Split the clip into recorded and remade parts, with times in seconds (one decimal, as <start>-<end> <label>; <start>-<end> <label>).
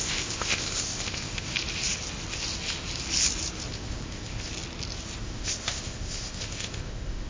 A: 0.0-1.5 remade; 1.5-3.7 recorded; 3.7-4.5 remade; 4.5-5.2 recorded; 5.2-7.3 remade